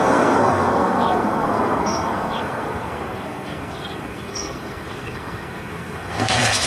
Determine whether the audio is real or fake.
fake